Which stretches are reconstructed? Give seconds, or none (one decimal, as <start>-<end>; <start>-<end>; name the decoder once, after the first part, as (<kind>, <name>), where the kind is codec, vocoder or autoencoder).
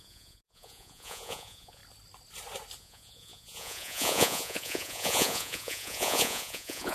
0.0-1.8 (vocoder, Vocos); 2.8-6.9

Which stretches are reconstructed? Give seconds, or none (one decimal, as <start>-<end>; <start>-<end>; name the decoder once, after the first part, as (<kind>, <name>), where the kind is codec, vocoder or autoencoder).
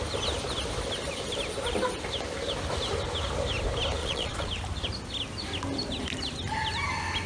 4.0-4.5 (vocoder, Vocos)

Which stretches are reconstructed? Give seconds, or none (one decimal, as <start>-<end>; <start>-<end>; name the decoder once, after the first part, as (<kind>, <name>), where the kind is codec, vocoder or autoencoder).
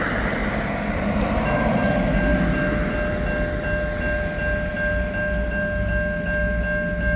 none